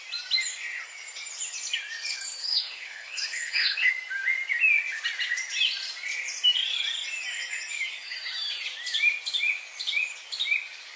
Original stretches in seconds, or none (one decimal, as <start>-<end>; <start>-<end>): 0.0-2.4; 3.9-11.0